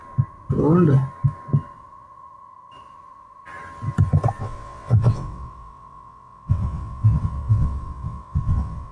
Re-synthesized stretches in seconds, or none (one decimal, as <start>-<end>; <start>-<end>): 4.4-8.9